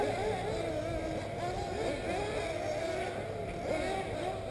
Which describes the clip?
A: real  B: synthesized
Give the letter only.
A